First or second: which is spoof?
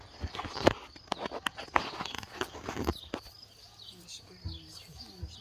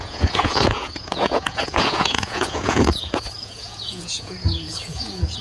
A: second